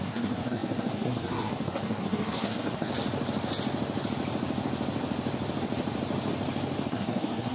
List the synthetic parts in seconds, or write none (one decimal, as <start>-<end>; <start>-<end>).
0.0-2.9; 6.9-7.5